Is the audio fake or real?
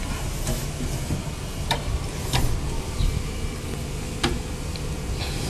real